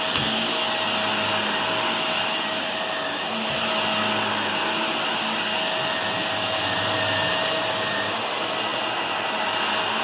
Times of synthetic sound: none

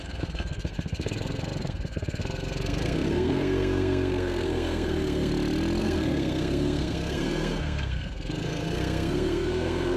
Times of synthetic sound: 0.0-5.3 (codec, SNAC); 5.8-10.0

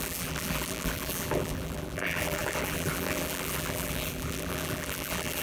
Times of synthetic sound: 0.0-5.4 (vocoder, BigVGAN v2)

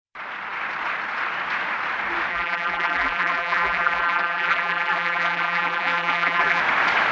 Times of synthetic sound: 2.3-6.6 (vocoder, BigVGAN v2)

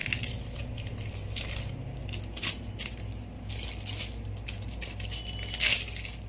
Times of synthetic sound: none

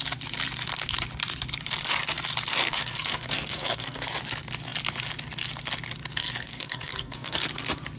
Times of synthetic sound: 2.6-4.0 (codec, SNAC); 6.2-7.4

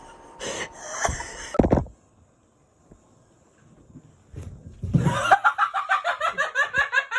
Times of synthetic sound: 0.0-0.6 (vocoder, BigVGAN v2); 1.8-2.8

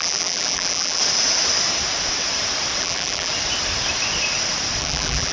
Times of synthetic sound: 0.0-1.0 (vocoder, BigVGAN v2); 2.8-3.3; 4.8-5.3